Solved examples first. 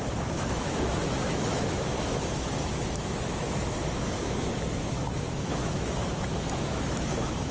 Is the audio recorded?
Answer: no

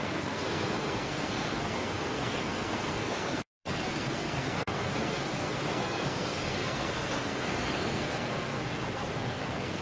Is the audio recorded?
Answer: no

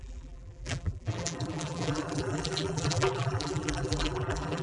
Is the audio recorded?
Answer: no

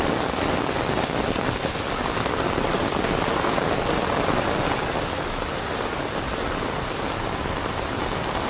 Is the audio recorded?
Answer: yes